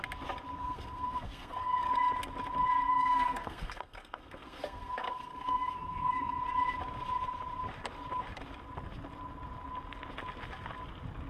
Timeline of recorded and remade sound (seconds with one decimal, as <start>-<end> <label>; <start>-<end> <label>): 0.0-0.6 recorded; 0.6-1.9 remade; 1.9-2.9 recorded; 2.9-6.4 remade; 6.4-11.3 recorded

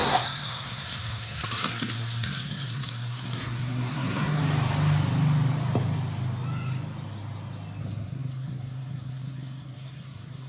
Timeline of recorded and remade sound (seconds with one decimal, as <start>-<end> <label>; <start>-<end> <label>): 0.0-4.4 remade; 4.4-7.8 recorded; 7.8-10.5 remade

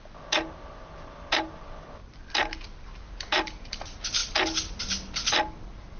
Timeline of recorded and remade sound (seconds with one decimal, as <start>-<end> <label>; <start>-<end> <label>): 0.0-6.0 recorded

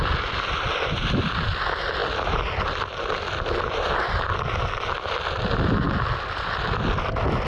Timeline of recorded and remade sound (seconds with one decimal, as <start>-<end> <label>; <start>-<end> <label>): 0.0-7.5 recorded

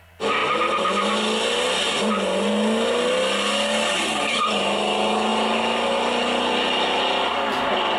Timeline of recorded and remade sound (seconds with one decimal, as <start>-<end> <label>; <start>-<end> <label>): 0.0-8.0 recorded